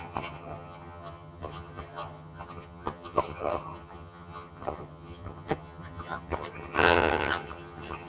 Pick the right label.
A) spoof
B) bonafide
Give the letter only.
A